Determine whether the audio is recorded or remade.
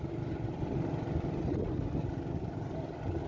recorded